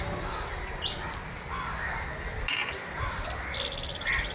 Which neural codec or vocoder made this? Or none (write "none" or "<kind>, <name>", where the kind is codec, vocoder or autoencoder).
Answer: none